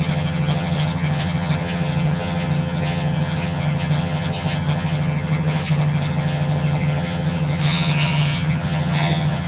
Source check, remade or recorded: remade